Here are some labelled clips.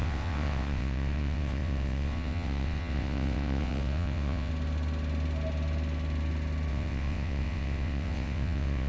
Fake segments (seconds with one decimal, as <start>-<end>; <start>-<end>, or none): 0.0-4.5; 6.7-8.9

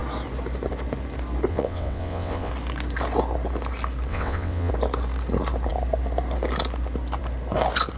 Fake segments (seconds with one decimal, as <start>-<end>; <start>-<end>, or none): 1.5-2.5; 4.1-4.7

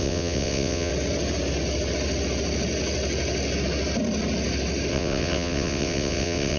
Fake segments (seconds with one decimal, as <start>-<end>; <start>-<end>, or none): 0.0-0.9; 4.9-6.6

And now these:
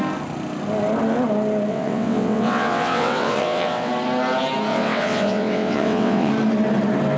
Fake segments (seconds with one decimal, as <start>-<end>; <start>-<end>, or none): 1.7-3.9; 4.7-6.3

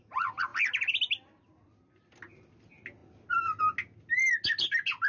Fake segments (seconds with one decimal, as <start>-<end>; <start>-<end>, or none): none

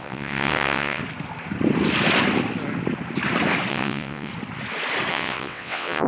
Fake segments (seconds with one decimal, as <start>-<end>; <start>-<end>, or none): 0.0-1.0; 3.7-4.3; 5.1-6.1

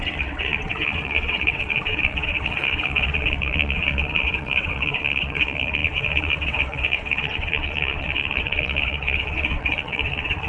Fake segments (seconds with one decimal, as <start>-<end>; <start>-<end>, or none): 0.0-10.5

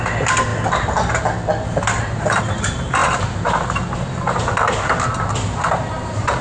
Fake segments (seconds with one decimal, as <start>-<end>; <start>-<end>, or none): none